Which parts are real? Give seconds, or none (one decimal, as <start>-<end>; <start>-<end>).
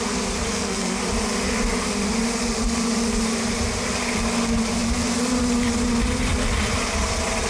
0.0-0.5; 1.0-7.5